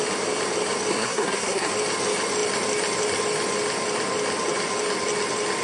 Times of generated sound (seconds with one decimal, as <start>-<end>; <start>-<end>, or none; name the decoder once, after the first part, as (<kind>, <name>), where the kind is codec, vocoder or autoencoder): 0.9-1.7 (codec, SNAC)